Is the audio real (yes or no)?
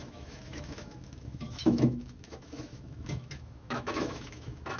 no